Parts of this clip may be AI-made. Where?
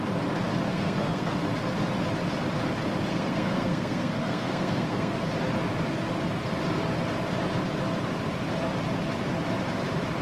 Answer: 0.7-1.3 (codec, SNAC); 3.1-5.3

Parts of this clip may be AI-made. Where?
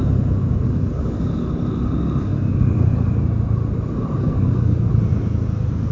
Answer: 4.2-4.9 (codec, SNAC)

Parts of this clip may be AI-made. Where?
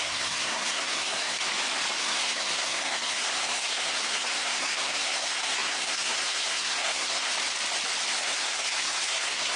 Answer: 0.0-1.5 (codec, SNAC); 2.0-7.3; 8.1-9.6